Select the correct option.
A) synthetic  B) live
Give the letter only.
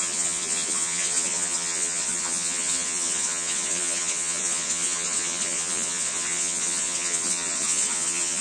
A